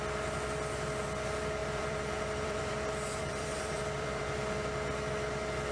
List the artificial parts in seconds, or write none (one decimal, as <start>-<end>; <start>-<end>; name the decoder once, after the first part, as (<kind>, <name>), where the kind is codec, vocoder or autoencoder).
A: 1.6-4.2 (vocoder, BigVGAN v2)